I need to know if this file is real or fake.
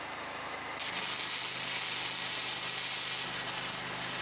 real